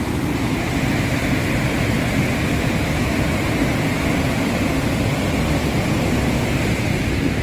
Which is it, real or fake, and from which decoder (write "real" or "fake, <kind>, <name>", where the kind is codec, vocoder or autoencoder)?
real